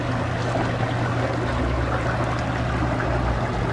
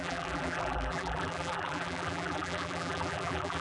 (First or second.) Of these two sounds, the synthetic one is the second